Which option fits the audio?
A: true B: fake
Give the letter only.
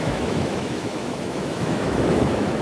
B